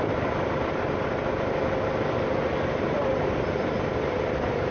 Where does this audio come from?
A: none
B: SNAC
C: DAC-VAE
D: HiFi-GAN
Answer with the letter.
A